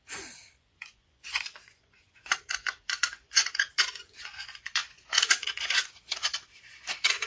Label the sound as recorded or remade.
remade